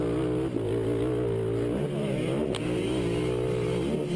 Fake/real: real